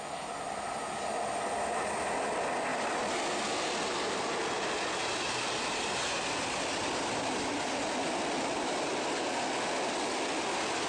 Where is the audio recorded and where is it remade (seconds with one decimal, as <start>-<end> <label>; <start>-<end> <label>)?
0.0-10.9 recorded